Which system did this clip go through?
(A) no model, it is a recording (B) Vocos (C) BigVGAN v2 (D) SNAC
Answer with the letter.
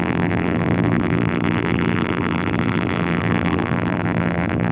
C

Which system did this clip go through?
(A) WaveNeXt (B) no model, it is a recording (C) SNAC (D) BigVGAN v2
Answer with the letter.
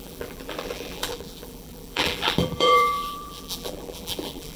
D